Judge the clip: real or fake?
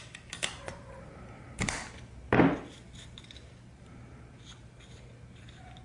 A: real